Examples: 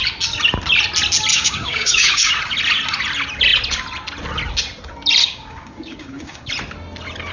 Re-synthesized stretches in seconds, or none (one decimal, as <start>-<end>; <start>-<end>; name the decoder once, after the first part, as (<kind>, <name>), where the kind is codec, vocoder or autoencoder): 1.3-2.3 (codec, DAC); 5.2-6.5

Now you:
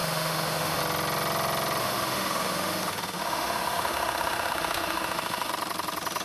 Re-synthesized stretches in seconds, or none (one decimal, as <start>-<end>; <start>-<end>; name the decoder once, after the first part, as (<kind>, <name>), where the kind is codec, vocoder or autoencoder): 0.0-0.8 (autoencoder, DAC-VAE); 1.8-5.5

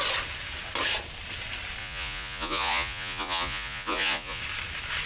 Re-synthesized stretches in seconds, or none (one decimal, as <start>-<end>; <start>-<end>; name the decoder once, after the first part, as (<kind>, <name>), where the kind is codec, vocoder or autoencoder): 1.8-4.4 (vocoder, Vocos)

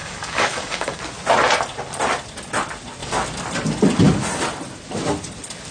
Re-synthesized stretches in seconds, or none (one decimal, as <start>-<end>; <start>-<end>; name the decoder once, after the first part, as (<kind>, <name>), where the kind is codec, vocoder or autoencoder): 0.0-1.0 (codec, DAC)

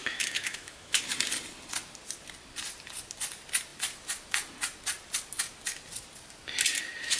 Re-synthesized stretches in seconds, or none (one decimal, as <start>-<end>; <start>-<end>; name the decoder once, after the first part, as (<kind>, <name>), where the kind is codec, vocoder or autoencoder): 0.0-1.0 (autoencoder, DAC-VAE)

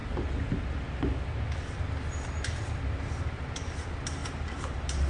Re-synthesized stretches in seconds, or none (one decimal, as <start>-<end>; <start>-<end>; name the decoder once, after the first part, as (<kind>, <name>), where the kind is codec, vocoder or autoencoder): 4.2-5.1 (vocoder, BigVGAN v2)